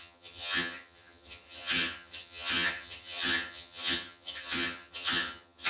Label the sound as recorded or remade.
remade